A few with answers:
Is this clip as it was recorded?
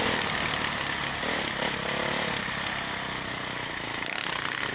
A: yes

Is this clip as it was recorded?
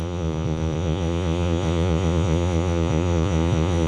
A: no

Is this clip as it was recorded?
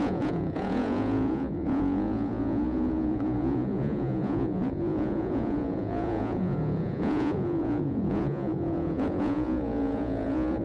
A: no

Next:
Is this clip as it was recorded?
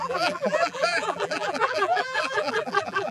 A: no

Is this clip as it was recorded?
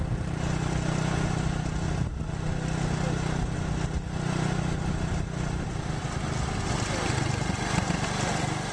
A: yes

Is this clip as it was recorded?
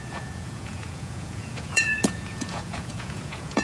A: no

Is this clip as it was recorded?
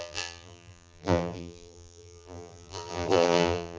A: no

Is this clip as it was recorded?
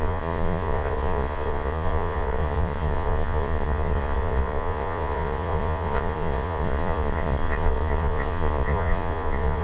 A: no